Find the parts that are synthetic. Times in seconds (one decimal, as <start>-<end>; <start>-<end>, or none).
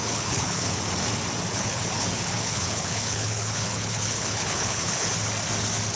0.0-0.8; 1.5-5.1